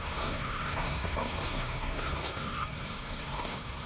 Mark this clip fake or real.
fake